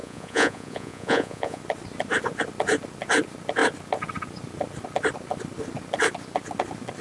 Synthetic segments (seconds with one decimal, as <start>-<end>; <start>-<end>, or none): 0.0-1.6